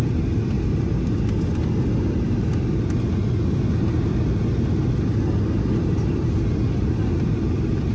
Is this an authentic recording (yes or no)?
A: yes